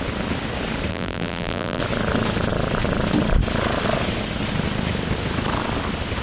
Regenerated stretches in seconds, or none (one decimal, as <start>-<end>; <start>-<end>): 0.9-1.8